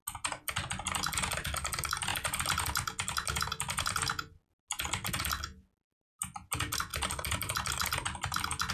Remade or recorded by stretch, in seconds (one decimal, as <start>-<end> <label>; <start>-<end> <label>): 0.0-8.7 recorded